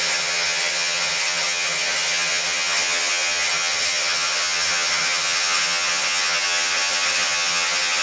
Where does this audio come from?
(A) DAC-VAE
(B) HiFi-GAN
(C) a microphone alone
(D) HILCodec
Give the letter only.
B